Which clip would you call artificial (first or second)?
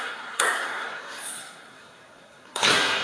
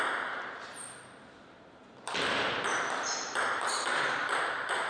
first